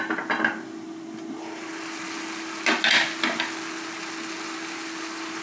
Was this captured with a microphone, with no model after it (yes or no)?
yes